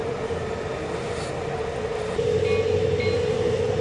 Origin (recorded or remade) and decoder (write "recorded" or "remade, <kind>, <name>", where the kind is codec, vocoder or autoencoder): recorded